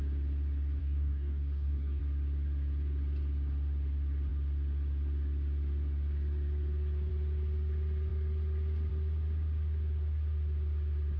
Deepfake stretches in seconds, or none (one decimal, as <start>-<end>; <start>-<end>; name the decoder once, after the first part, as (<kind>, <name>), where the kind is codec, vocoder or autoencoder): 0.8-2.0 (codec, DAC)